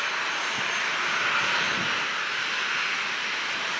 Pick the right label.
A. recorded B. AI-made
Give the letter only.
A